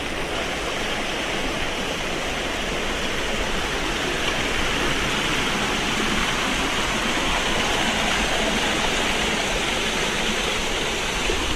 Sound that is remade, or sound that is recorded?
recorded